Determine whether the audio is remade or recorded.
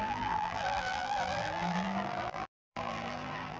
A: remade